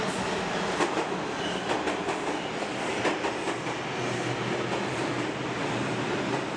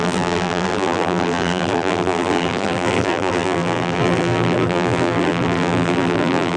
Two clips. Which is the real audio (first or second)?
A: first